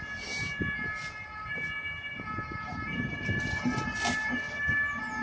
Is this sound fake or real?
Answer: real